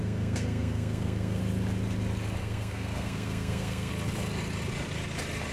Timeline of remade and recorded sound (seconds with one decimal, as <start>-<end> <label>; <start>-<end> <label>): 0.0-1.4 remade; 1.4-2.4 recorded; 2.4-3.9 remade; 3.9-5.5 recorded